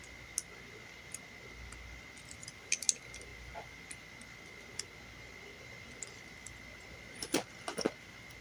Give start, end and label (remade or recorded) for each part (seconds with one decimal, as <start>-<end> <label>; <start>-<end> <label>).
0.0-8.4 recorded